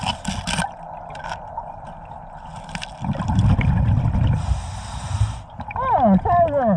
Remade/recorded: recorded